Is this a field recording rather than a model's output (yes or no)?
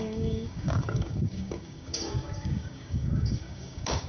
no